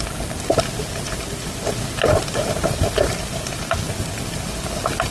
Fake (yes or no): no